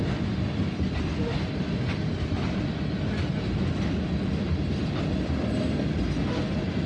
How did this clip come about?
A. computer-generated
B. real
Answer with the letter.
B